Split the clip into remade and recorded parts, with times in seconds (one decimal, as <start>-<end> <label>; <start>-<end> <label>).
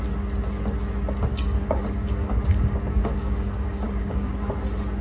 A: 0.0-1.3 recorded; 1.3-4.3 remade; 4.3-5.0 recorded